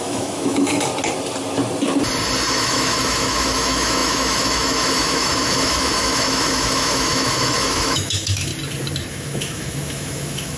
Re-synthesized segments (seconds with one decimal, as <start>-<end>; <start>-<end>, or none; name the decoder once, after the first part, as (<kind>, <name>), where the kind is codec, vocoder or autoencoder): 0.0-0.9 (autoencoder, DAC-VAE); 2.5-8.5; 9.1-10.6